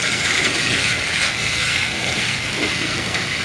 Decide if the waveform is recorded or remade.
remade